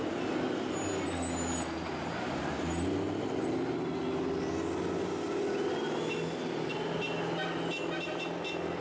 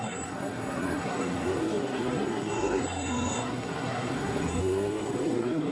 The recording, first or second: first